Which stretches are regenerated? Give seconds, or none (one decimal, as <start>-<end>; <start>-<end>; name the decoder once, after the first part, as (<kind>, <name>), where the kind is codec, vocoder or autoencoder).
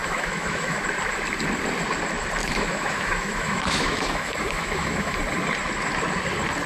0.0-0.8 (autoencoder, DAC-VAE); 2.4-5.2